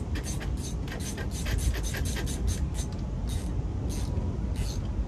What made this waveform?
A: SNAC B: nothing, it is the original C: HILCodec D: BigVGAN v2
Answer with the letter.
B